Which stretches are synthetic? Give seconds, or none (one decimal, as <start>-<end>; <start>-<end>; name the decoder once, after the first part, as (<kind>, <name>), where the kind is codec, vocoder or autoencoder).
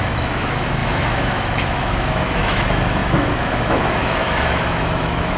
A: 0.0-5.4 (autoencoder, DAC-VAE)